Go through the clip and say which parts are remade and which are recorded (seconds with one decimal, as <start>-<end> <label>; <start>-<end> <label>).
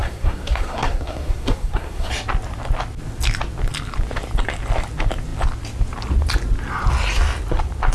0.0-2.1 remade; 2.1-7.9 recorded